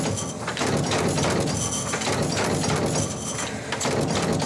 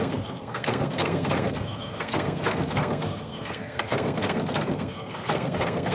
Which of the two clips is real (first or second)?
first